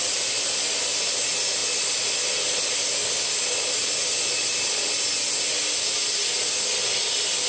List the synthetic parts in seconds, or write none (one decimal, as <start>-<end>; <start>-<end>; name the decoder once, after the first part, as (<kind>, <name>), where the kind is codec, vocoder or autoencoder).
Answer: none